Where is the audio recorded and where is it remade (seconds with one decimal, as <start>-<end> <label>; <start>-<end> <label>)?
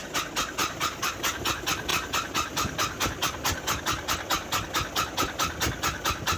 0.0-0.6 recorded; 0.6-1.1 remade; 1.1-6.4 recorded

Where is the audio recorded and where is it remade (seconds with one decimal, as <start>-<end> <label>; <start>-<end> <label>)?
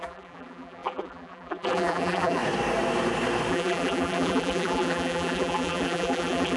0.0-2.4 remade; 2.4-3.5 recorded; 3.5-6.6 remade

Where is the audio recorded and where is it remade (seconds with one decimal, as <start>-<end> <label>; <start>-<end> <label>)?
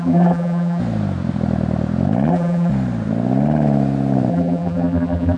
0.0-0.8 remade; 0.8-2.3 recorded; 2.3-2.7 remade; 2.7-4.3 recorded; 4.3-5.4 remade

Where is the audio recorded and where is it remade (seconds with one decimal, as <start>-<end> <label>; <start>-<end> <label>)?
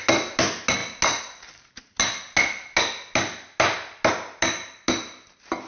0.0-5.7 recorded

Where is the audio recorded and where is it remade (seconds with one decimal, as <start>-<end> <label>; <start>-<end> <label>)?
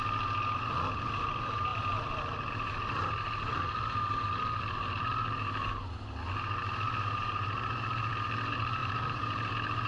0.0-6.6 recorded; 6.6-8.1 remade; 8.1-8.8 recorded; 8.8-9.5 remade; 9.5-9.9 recorded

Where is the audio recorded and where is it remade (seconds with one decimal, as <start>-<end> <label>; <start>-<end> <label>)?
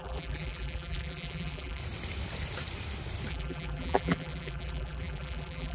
0.0-1.8 remade; 1.8-3.3 recorded; 3.3-5.7 remade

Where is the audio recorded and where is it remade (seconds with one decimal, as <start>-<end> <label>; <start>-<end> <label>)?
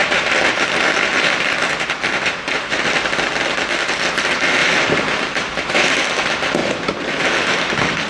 0.0-2.8 remade; 2.8-4.6 recorded; 4.6-6.0 remade; 6.0-6.6 recorded; 6.6-7.2 remade; 7.2-8.1 recorded